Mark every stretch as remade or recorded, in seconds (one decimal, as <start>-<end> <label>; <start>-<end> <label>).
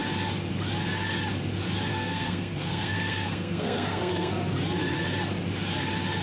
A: 0.0-1.9 recorded; 1.9-4.3 remade; 4.3-6.2 recorded